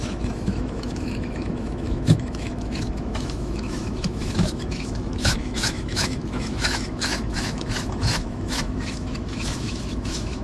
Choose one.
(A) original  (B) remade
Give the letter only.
B